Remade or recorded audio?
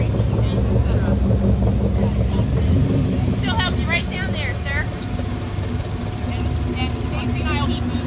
recorded